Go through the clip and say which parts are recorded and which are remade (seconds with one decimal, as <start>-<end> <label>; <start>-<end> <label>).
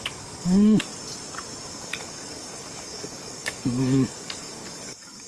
0.0-0.9 remade; 0.9-1.7 recorded; 1.7-5.3 remade